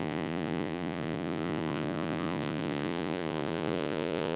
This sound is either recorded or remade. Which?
remade